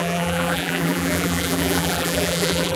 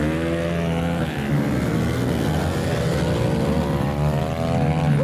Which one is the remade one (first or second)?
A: first